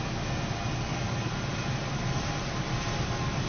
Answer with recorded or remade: recorded